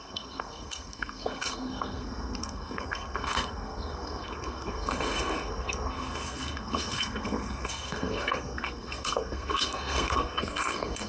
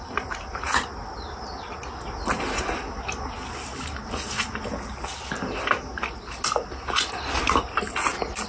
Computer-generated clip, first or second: first